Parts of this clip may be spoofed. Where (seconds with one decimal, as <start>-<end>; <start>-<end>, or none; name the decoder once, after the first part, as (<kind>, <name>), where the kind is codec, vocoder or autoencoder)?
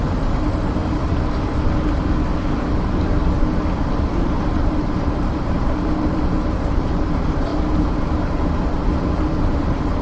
0.0-0.8 (vocoder, BigVGAN v2); 4.4-7.5; 9.3-10.0